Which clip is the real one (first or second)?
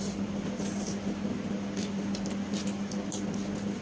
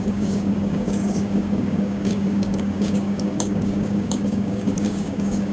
first